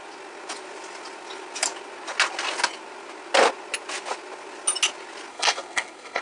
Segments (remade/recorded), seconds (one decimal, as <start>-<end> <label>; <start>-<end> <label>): 0.0-5.3 recorded; 5.3-6.2 remade